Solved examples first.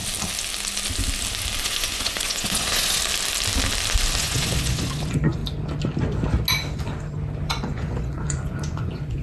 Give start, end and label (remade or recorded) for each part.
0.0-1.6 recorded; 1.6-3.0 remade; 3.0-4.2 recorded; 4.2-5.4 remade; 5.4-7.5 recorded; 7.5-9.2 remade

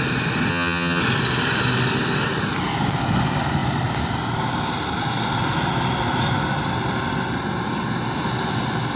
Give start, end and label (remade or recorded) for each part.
0.0-0.5 recorded; 0.5-1.0 remade; 1.0-9.0 recorded

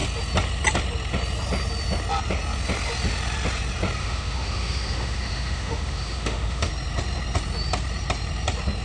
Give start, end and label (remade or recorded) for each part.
0.0-4.0 recorded; 4.0-6.7 remade; 6.7-8.8 recorded

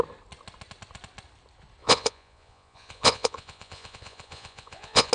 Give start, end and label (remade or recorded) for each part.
0.0-1.8 recorded; 1.8-5.1 remade

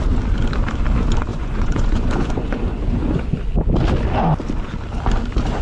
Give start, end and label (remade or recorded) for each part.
0.0-1.3 recorded; 1.3-3.3 remade; 3.3-5.6 recorded

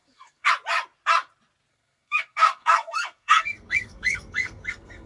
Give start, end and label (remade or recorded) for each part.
0.0-0.5 remade; 0.5-1.7 recorded; 1.7-5.1 remade

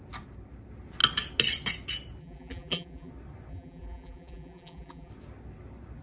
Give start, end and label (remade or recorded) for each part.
0.0-2.2 recorded; 2.2-3.1 remade; 3.1-3.5 recorded; 3.5-5.1 remade; 5.1-6.0 recorded